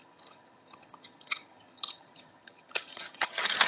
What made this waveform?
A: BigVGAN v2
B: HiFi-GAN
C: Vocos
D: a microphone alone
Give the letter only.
B